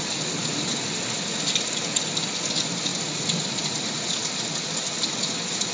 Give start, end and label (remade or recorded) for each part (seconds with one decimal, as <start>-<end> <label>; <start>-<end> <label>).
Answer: 0.0-5.7 recorded

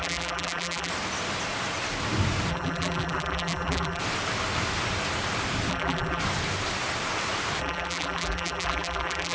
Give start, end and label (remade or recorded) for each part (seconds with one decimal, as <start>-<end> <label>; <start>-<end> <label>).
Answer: 0.0-0.9 remade; 0.9-2.5 recorded; 2.5-4.0 remade; 4.0-5.7 recorded; 5.7-6.2 remade; 6.2-7.6 recorded; 7.6-9.3 remade

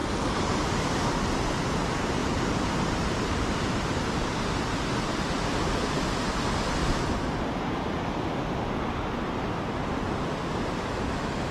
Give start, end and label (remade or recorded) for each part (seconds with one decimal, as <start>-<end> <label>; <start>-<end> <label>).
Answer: 0.0-1.1 remade; 1.1-2.2 recorded; 2.2-3.8 remade; 3.8-11.5 recorded

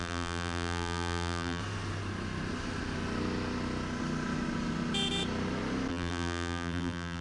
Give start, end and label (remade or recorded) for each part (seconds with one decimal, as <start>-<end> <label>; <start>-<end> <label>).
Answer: 0.0-1.6 remade; 1.6-5.9 recorded; 5.9-7.2 remade

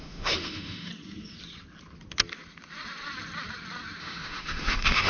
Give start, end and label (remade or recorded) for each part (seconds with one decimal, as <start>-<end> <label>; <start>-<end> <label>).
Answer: 0.0-0.9 remade; 0.9-4.0 recorded; 4.0-5.1 remade

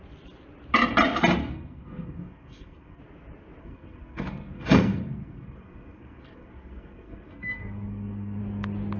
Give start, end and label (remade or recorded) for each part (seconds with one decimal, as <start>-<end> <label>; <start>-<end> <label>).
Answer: 0.0-1.4 recorded; 1.4-3.0 remade; 3.0-3.6 recorded; 3.6-8.4 remade; 8.4-9.0 recorded

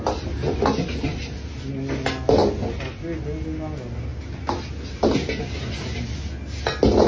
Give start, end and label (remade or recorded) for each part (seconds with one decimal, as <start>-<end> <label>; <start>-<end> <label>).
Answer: 0.0-7.1 recorded

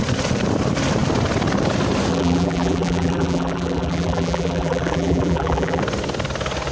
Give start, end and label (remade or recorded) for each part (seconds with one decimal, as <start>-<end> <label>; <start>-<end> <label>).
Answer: 0.0-2.1 recorded; 2.1-5.8 remade; 5.8-6.7 recorded